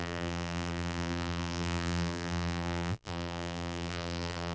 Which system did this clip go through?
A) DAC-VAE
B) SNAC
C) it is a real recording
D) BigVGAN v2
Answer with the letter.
D